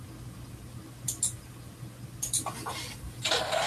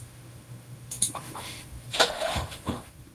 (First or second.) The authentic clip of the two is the first